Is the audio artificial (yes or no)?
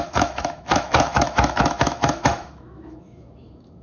yes